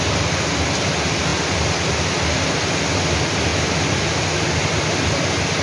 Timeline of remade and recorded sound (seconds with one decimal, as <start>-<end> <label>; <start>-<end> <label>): 0.0-5.6 recorded